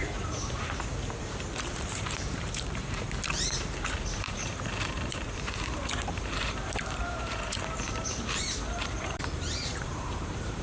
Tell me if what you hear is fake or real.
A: fake